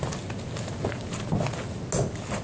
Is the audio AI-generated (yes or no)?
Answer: no